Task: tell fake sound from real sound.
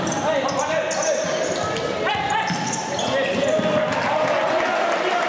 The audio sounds real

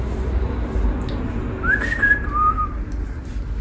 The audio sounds real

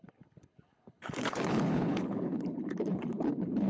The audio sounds fake